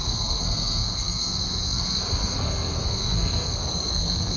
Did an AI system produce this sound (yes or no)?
yes